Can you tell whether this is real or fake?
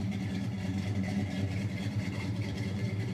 fake